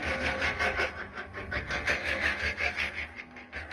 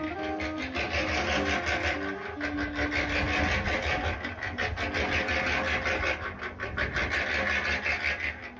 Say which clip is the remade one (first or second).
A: first